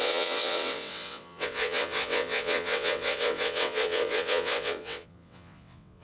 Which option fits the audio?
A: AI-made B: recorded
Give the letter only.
A